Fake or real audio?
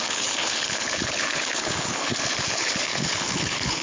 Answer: fake